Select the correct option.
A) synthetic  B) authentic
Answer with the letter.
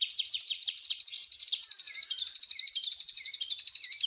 A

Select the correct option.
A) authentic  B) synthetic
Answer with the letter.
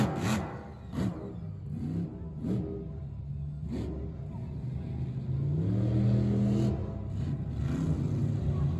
A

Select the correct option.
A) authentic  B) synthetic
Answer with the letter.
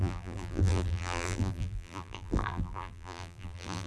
B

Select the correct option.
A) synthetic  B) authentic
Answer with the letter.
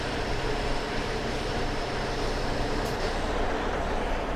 A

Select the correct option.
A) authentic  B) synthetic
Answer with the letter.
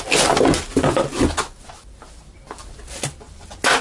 A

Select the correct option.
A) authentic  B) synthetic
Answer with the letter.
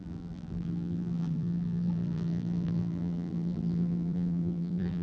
B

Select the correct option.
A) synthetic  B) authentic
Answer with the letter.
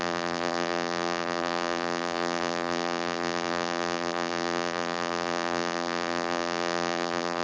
A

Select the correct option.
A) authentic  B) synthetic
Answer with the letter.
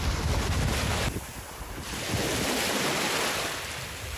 A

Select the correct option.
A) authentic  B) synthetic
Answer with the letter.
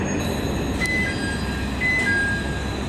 A